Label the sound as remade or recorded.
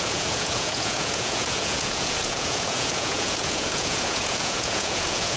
remade